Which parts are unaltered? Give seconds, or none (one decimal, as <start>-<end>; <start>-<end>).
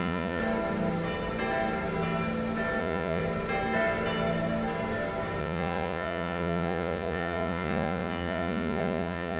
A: 0.4-2.8; 3.2-5.4